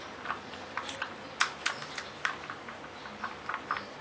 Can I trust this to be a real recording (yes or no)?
yes